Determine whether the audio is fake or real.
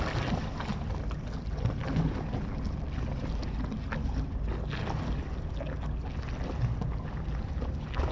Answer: real